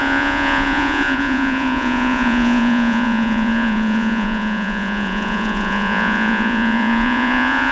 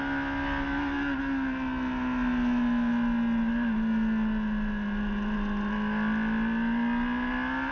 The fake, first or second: first